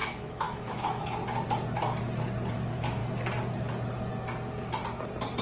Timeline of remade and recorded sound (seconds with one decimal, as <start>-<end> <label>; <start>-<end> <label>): 0.0-1.2 remade; 1.2-2.5 recorded; 2.5-3.0 remade; 3.0-5.4 recorded